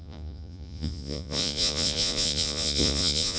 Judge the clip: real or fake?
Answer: fake